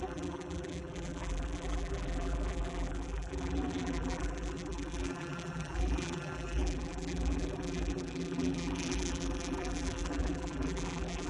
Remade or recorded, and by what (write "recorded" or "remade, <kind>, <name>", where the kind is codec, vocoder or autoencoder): remade, vocoder, BigVGAN v2